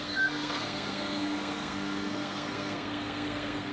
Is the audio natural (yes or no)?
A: no